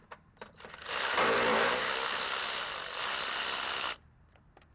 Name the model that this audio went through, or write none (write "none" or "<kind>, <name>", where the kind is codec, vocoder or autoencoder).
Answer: none